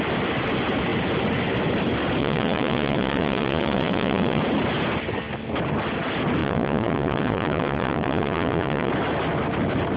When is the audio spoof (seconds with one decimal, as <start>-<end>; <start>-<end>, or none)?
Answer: 2.2-4.4; 6.4-8.9